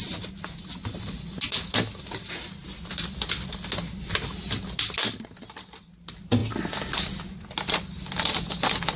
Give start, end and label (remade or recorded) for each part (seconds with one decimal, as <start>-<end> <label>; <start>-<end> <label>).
0.0-9.0 recorded